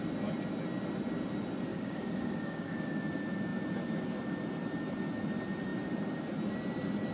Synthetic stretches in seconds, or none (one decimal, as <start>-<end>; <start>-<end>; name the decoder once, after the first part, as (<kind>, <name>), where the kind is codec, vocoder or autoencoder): 1.7-3.0 (codec, DAC)